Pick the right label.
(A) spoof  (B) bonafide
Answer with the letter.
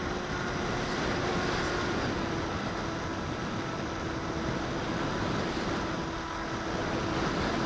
B